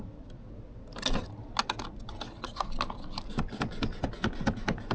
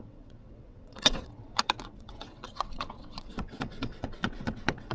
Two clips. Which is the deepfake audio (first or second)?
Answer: second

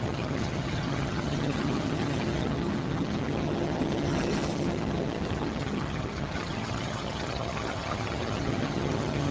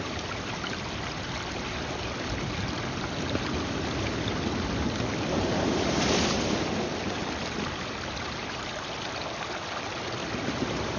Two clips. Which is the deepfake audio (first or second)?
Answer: first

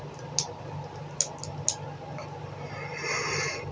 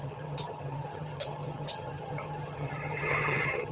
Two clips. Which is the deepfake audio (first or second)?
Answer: second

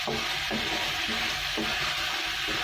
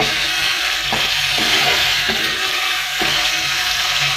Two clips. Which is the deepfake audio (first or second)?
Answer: second